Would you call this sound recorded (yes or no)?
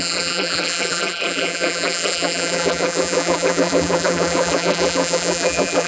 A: no